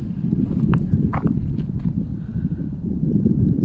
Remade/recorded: recorded